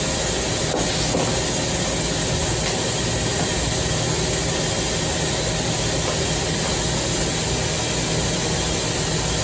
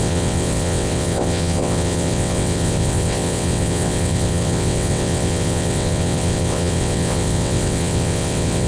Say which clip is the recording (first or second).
first